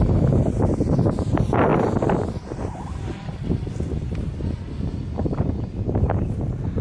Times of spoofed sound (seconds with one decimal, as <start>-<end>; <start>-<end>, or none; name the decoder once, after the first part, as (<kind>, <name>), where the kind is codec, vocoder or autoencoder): none